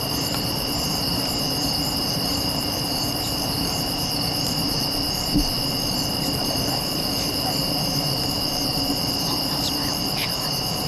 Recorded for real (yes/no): no